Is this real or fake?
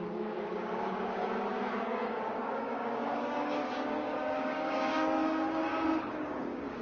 fake